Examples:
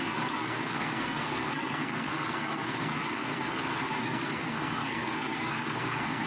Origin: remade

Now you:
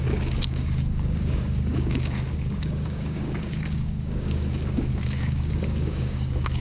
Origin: remade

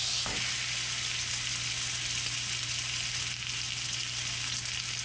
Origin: recorded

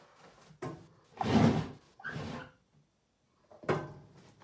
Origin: recorded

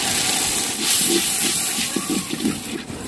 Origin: recorded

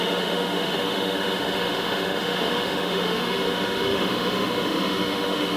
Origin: remade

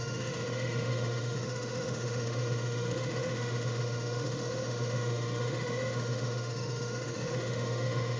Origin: remade